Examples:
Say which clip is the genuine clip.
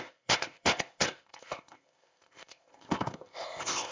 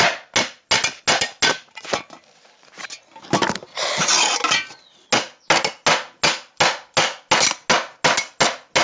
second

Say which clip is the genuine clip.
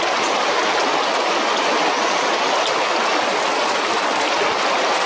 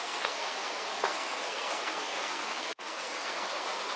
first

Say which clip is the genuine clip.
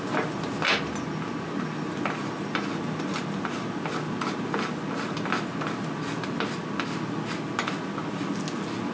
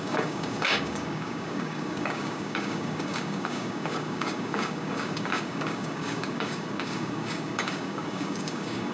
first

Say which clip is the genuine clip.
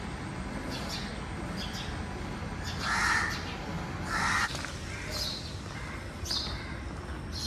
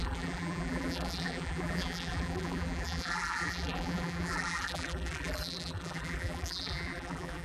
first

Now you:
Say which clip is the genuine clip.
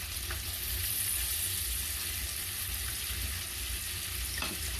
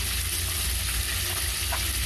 second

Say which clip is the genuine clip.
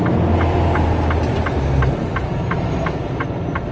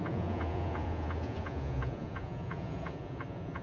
first